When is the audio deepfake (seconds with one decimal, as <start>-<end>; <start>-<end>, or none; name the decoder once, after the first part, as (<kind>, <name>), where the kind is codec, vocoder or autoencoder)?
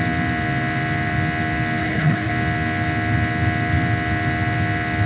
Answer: 1.8-2.3 (codec, HILCodec)